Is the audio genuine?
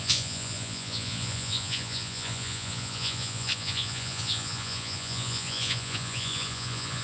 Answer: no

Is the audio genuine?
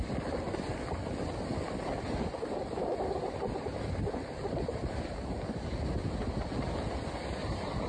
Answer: yes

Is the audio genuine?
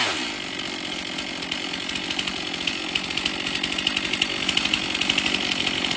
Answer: yes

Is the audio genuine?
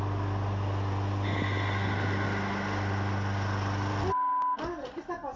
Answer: yes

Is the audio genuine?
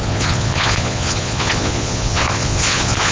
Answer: no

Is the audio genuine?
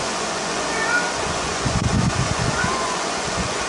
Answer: no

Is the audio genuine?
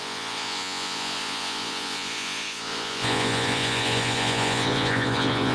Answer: no